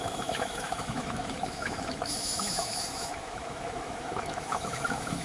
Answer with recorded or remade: remade